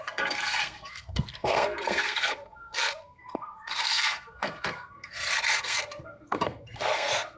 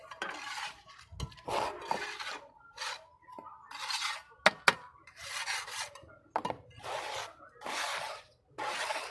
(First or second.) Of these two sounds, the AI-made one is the first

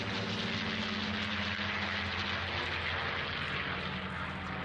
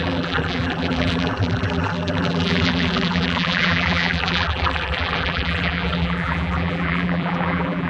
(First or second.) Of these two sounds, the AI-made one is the second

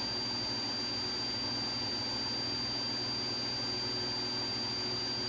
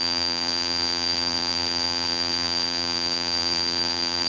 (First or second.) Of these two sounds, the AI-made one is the second